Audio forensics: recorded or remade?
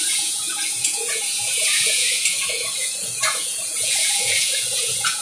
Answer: remade